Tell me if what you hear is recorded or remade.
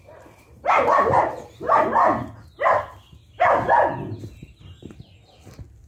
recorded